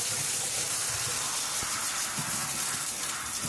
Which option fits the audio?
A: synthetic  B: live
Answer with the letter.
B